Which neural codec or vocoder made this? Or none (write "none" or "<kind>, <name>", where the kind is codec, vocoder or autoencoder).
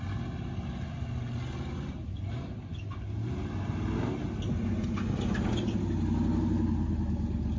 none